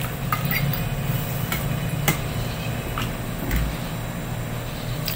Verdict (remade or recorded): recorded